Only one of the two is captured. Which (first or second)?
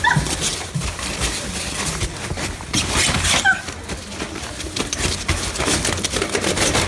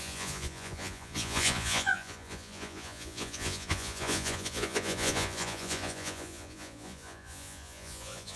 first